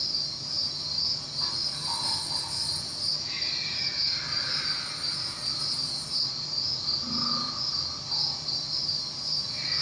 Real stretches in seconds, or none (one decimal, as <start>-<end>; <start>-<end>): 0.0-9.8